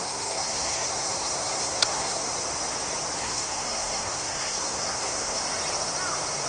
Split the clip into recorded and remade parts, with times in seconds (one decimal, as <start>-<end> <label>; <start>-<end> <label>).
0.0-2.3 remade; 2.3-3.2 recorded; 3.2-5.4 remade; 5.4-6.5 recorded

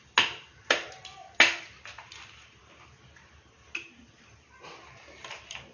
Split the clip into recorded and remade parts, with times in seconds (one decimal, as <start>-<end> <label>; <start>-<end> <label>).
0.0-5.7 recorded

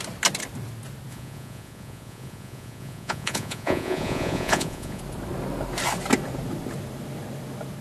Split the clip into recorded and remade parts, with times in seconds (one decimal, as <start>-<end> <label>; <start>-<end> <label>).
0.0-1.1 recorded; 1.1-5.0 remade; 5.0-7.8 recorded